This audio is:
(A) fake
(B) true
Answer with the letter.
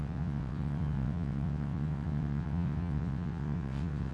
A